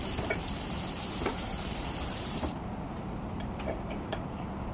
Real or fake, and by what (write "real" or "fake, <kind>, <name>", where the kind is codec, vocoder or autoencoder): fake, vocoder, BigVGAN v2